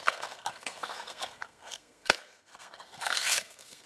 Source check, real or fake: fake